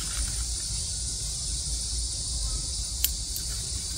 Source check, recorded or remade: remade